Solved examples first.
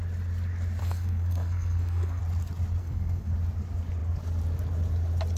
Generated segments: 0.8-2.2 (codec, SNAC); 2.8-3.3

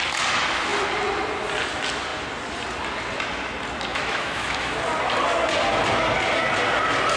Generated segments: 3.9-4.8 (autoencoder, DAC-VAE)

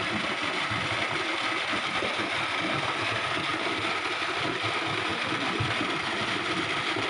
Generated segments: none

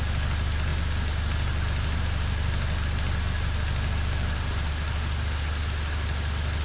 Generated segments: none

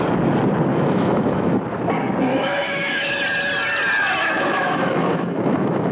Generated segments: 0.7-1.6 (autoencoder, DAC-VAE); 2.3-3.1; 4.2-5.9